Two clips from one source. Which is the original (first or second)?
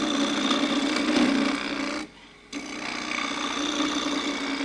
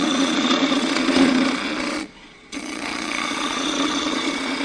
first